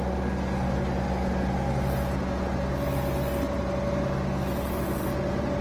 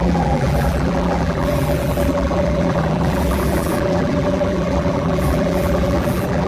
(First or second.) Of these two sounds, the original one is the first